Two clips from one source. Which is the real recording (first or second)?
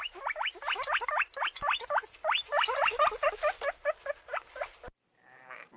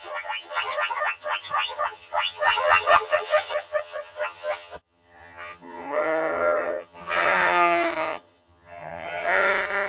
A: first